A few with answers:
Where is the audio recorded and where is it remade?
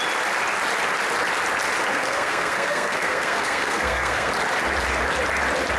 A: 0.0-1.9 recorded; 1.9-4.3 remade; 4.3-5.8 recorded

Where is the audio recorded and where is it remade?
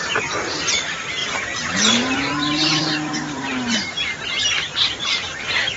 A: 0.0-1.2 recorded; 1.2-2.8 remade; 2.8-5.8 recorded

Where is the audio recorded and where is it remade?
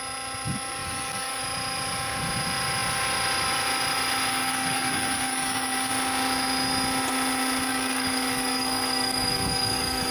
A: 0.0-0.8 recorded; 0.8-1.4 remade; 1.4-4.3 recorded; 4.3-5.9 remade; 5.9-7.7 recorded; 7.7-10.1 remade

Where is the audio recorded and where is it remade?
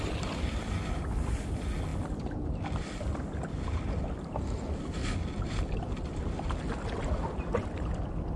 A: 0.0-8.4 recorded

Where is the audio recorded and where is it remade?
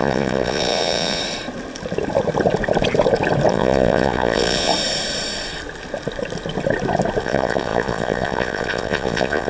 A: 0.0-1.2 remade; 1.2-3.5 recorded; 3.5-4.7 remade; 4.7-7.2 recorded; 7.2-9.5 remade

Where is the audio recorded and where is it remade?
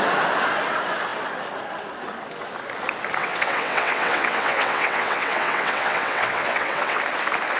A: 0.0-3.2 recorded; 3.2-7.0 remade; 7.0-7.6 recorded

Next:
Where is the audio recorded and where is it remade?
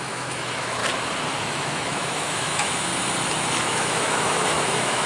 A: 0.0-0.8 remade; 0.8-1.4 recorded; 1.4-2.9 remade; 2.9-3.6 recorded; 3.6-5.1 remade